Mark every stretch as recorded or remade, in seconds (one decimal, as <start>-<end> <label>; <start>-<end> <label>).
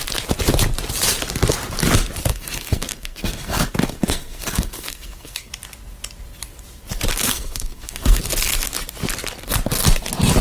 0.0-2.3 recorded; 2.3-5.5 remade; 5.5-7.1 recorded; 7.1-8.2 remade; 8.2-10.4 recorded